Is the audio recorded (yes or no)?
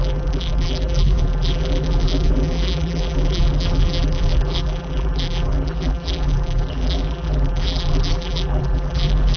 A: no